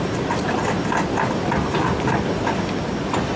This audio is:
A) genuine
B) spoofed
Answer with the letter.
A